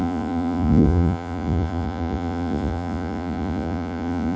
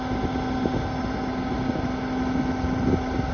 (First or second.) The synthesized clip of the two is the first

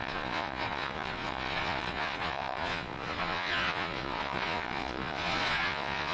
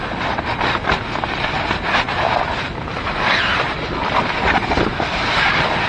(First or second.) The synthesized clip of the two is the first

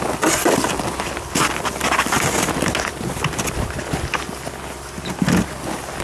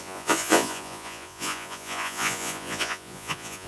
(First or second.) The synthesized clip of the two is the second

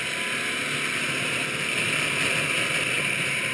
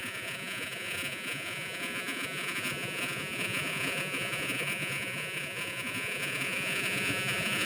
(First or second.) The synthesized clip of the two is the second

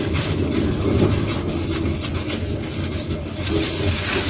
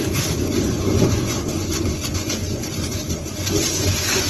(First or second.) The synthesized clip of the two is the second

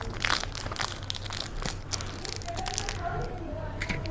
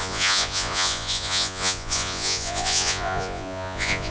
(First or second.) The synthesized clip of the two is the second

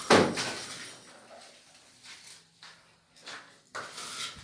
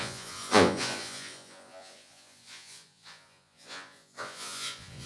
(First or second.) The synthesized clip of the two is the second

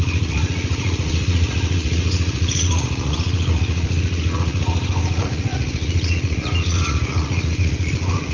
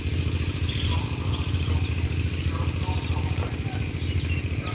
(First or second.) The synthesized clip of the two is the first